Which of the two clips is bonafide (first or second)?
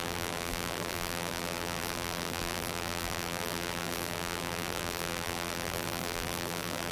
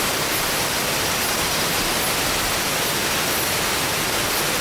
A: second